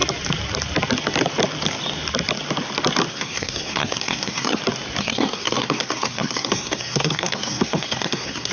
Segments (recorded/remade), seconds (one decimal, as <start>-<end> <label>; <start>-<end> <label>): 0.0-3.1 recorded; 3.1-4.6 remade; 4.6-5.0 recorded; 5.0-8.5 remade